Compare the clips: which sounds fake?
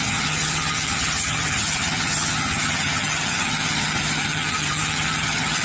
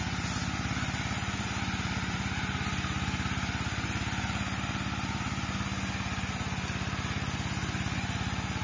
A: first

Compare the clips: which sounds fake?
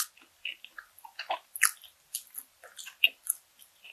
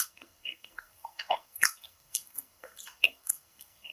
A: second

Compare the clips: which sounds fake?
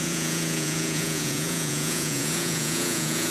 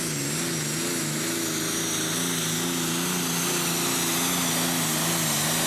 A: first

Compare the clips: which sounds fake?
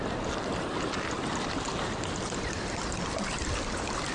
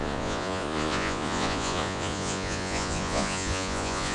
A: second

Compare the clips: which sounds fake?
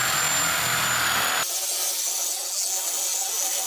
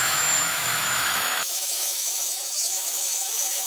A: second